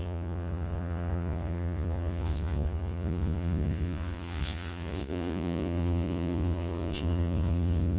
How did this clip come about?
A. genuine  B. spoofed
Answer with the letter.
B